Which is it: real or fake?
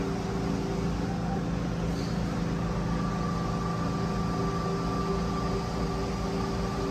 real